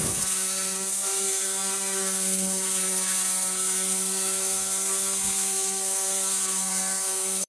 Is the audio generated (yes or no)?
yes